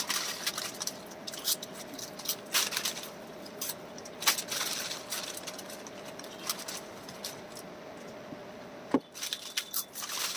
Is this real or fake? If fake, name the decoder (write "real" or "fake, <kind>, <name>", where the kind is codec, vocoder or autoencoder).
real